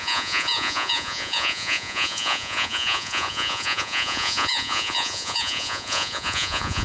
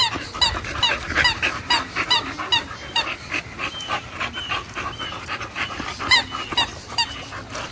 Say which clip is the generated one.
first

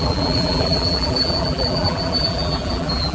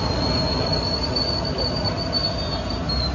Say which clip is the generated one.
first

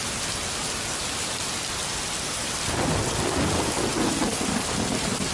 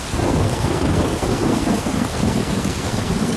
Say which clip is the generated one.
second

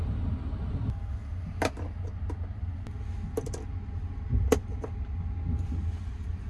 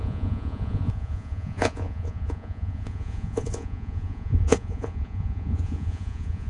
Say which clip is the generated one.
second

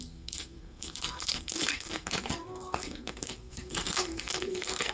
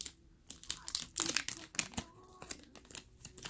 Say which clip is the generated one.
first